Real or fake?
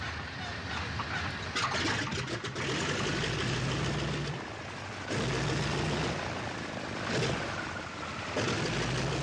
real